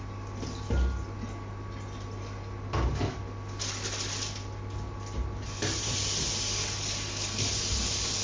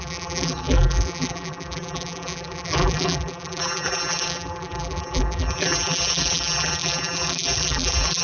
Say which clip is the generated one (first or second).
second